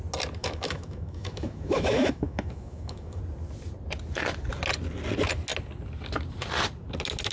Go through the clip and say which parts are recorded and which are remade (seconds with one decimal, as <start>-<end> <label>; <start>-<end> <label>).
0.0-0.4 recorded; 0.4-3.2 remade; 3.2-7.3 recorded